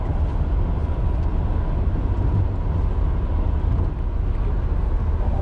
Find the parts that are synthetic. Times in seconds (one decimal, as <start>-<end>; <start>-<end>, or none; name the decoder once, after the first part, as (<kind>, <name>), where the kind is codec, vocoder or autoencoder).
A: none